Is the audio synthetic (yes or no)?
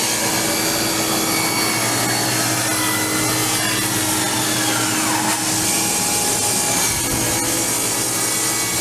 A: no